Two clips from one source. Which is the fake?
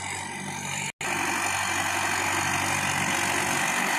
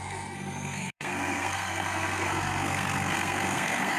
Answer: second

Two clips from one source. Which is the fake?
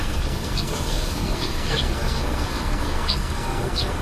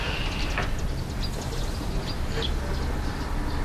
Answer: first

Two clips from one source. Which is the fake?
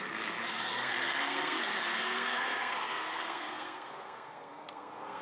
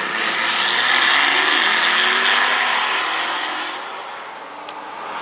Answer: first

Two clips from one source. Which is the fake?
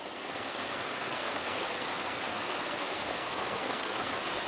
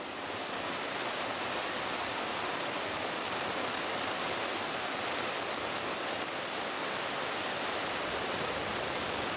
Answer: first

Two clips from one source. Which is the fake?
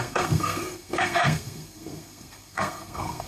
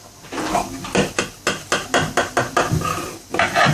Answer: first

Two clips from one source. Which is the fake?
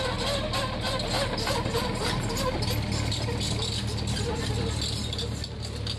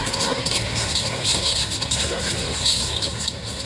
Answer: second